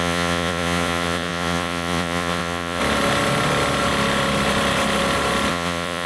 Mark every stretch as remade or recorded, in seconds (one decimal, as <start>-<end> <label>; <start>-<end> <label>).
0.0-2.8 remade; 2.8-5.5 recorded; 5.5-6.1 remade